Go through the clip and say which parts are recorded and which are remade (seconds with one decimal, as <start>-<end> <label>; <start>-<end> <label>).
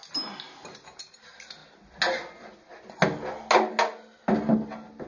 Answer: 0.0-5.1 recorded